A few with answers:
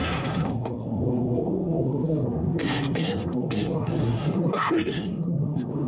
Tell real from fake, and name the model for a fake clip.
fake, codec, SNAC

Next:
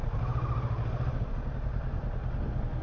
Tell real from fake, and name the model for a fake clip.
real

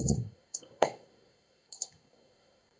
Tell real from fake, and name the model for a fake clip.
fake, codec, SNAC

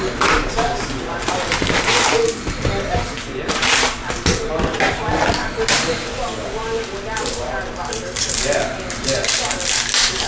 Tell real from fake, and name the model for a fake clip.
real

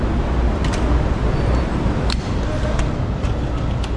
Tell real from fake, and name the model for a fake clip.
real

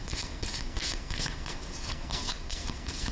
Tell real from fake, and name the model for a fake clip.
fake, codec, SNAC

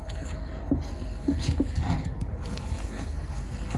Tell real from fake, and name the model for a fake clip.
fake, codec, SNAC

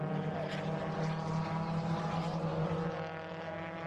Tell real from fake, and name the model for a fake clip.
real